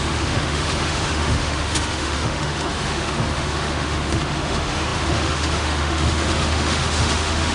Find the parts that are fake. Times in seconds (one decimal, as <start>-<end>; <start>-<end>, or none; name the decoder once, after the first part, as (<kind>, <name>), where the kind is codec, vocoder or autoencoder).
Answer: 0.0-7.5 (autoencoder, DAC-VAE)